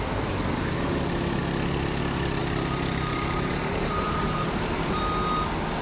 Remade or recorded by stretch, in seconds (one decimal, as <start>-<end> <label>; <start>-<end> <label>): 0.0-2.4 recorded; 2.4-5.0 remade; 5.0-5.8 recorded